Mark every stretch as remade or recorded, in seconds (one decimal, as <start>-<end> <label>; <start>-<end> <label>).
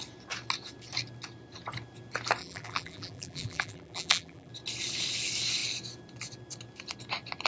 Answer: 0.0-2.4 recorded; 2.4-4.5 remade; 4.5-7.5 recorded